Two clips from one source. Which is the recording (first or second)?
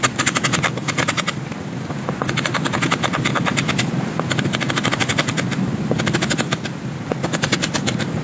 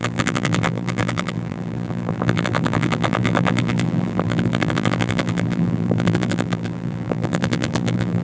first